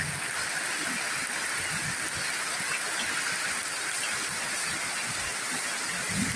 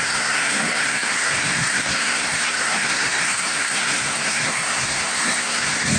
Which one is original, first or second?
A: first